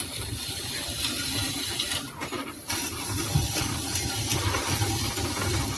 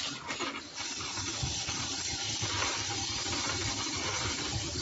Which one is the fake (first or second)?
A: first